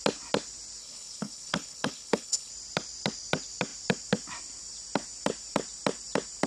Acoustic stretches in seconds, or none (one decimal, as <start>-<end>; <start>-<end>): 0.0-0.8; 2.5-6.5